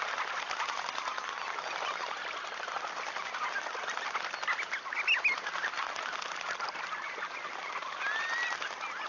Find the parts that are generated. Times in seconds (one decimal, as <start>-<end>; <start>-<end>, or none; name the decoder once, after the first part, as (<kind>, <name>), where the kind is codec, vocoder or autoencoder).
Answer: none

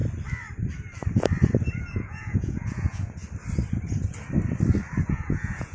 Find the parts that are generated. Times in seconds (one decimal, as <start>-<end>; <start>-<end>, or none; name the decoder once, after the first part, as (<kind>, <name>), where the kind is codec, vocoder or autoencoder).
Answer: 1.8-3.2 (vocoder, Vocos); 5.0-5.7

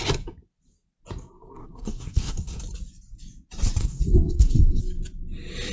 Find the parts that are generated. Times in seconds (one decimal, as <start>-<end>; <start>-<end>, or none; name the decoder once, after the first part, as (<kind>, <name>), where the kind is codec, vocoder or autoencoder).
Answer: 1.5-2.6 (codec, SNAC); 3.8-4.8

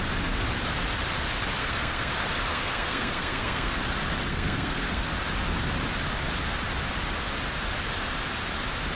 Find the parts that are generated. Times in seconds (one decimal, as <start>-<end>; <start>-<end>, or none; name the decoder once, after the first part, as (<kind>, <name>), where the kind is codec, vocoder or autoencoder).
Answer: 1.6-2.1 (codec, SNAC); 2.5-3.7; 4.3-5.0

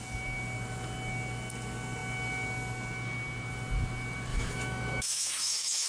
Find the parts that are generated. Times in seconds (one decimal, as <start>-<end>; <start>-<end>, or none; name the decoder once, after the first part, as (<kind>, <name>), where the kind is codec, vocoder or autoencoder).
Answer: 4.3-5.9 (autoencoder, DAC-VAE)

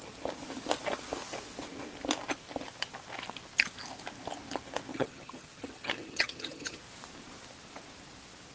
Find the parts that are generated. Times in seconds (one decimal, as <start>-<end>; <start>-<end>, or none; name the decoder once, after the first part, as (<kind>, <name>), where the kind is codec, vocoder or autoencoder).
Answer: 4.9-6.8 (vocoder, HiFi-GAN)

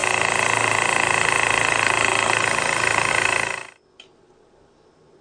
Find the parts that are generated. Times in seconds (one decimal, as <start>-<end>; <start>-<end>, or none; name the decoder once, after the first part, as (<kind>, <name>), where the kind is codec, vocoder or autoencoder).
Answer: none